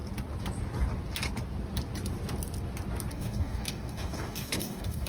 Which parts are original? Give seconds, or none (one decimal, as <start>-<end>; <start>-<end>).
0.0-3.1